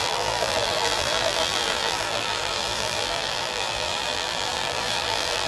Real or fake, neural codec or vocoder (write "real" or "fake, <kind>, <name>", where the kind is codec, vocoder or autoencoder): fake, vocoder, BigVGAN v2